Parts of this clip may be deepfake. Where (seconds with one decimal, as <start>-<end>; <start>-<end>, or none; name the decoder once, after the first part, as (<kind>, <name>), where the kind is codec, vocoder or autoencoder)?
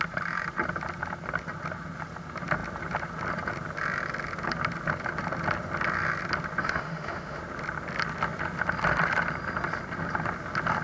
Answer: 6.6-7.4 (autoencoder, DAC-VAE)